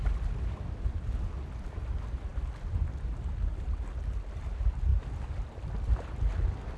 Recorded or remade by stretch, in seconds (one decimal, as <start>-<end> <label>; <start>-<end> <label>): 0.0-6.8 recorded